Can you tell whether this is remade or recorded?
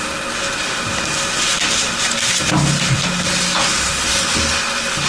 recorded